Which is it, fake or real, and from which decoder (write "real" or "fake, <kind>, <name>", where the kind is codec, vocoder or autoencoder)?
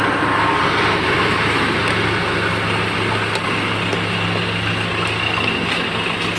real